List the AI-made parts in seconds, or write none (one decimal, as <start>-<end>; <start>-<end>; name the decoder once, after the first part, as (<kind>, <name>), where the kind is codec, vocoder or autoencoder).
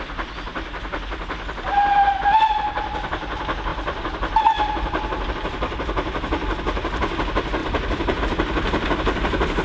7.6-8.2 (vocoder, BigVGAN v2)